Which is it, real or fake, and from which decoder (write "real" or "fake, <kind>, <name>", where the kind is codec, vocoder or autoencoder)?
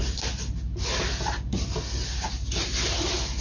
real